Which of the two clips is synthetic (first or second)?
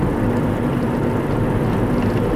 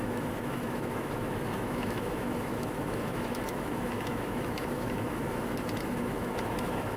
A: second